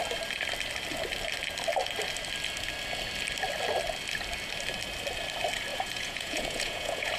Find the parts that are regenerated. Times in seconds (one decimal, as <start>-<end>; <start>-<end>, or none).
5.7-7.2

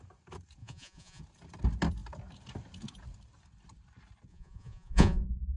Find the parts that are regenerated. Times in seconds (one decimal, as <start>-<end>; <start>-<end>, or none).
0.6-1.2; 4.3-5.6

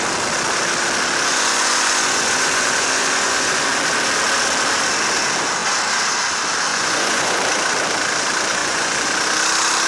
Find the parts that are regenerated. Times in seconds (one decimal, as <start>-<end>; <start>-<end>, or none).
1.3-3.7; 6.7-7.4; 8.6-9.1

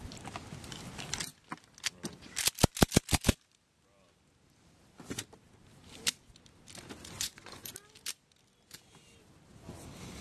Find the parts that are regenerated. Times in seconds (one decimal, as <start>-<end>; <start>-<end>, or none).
7.0-7.7

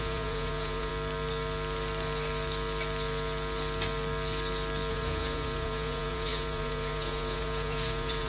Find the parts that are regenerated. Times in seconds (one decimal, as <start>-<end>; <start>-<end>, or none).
0.0-0.9; 4.9-8.3

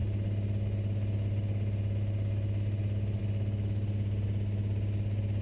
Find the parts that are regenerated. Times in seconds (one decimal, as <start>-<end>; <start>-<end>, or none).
none

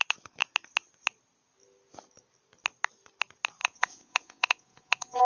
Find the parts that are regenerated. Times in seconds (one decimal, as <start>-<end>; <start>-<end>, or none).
3.6-5.2

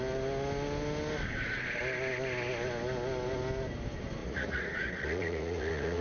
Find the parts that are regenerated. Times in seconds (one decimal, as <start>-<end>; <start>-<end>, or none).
4.2-6.0